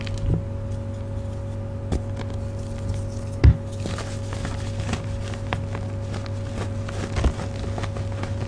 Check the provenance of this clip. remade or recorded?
recorded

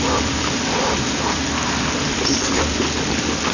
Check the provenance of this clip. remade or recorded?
recorded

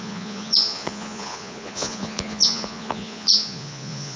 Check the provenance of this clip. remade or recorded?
remade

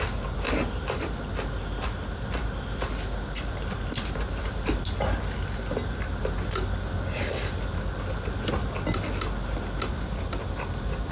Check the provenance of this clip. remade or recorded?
recorded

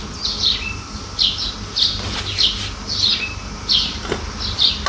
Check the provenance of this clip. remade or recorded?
recorded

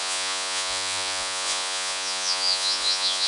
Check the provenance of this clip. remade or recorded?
remade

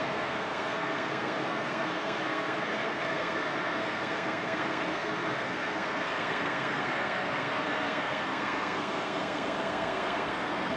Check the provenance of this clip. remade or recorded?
remade